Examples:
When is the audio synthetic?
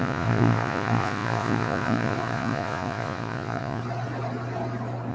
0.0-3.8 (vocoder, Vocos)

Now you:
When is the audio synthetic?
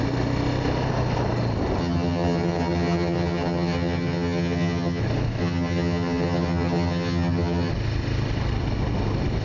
1.8-5.0 (vocoder, HiFi-GAN); 5.4-7.7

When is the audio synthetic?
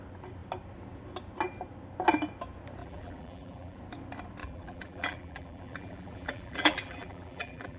2.8-3.8 (vocoder, BigVGAN v2); 4.4-7.8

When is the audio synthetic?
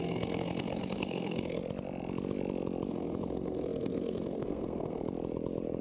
0.0-1.6 (codec, SNAC); 2.9-5.0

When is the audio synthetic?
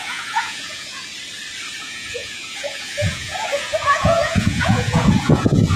0.0-1.1 (vocoder, Vocos); 1.8-5.8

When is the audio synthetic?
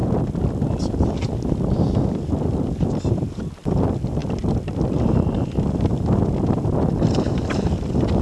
none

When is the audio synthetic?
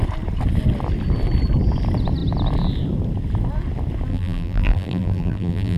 4.1-5.8 (vocoder, BigVGAN v2)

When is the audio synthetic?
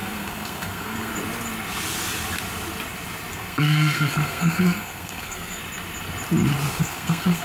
0.0-1.1 (codec, SNAC); 3.3-5.6; 6.7-7.4